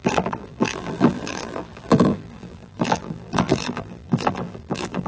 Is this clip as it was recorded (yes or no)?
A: no